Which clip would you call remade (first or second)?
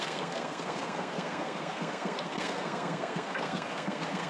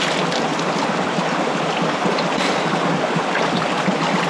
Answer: first